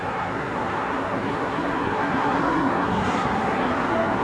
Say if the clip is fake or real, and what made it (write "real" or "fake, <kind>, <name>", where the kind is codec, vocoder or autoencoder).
fake, codec, SNAC